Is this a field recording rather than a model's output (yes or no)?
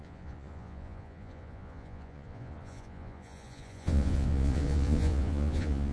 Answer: no